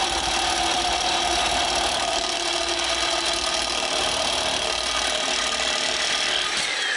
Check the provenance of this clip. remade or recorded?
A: recorded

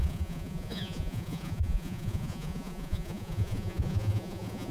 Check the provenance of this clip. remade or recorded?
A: remade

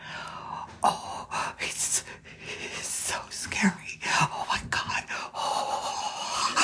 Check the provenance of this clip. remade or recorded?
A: recorded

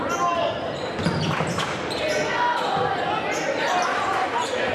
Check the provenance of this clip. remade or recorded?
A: recorded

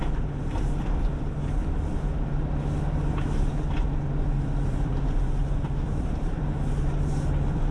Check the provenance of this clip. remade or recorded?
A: remade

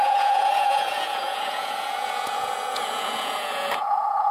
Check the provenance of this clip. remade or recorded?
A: remade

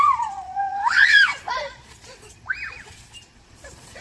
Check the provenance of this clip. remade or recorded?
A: remade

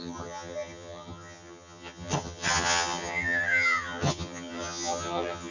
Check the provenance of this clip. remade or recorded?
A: remade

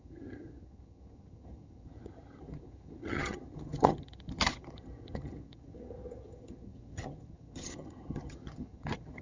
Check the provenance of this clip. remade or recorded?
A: remade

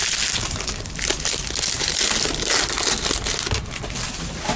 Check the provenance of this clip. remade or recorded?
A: recorded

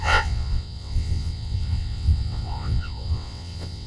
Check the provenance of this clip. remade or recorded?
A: remade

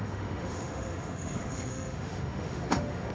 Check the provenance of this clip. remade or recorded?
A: remade